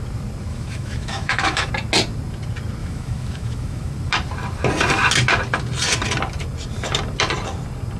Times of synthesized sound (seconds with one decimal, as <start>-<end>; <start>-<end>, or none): 0.5-1.7; 2.8-3.9

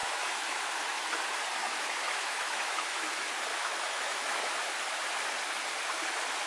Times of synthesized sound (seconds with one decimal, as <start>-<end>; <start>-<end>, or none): 0.0-0.7; 1.6-3.1; 3.5-4.7

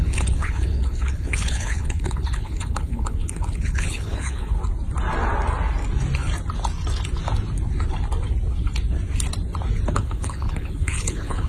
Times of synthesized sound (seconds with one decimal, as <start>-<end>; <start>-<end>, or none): 0.0-4.6; 9.9-11.5

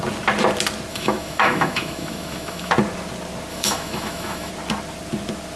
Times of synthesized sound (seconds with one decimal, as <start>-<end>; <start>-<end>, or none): 0.9-2.7; 3.5-4.5

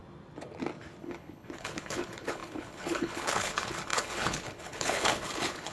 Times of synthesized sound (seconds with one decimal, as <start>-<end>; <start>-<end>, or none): 1.0-5.7